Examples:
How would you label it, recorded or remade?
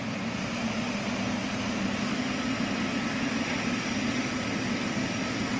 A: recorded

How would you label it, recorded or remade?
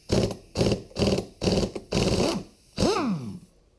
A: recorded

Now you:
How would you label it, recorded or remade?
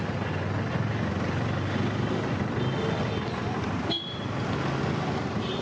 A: recorded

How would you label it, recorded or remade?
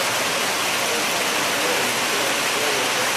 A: recorded